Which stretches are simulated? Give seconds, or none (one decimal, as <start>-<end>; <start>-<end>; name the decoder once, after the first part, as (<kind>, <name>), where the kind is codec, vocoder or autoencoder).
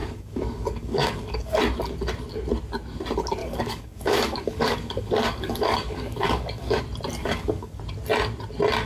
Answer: 0.0-1.6 (codec, DAC); 3.4-6.8; 7.2-7.8